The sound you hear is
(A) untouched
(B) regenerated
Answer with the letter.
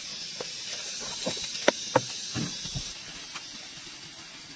A